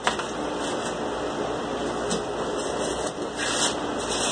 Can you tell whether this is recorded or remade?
recorded